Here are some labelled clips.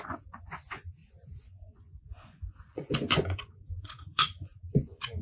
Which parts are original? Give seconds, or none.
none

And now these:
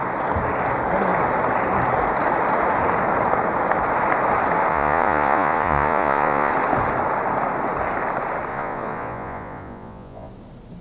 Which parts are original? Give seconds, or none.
0.0-4.7; 6.5-8.5; 10.3-10.8

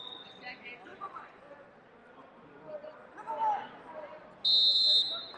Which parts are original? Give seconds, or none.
0.0-0.9; 1.4-5.4